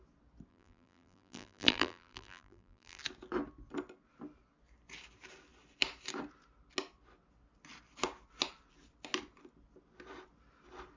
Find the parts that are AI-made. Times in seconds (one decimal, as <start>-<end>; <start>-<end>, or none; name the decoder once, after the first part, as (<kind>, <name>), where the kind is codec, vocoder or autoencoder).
0.5-3.0 (vocoder, BigVGAN v2)